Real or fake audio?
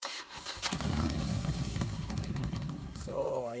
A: fake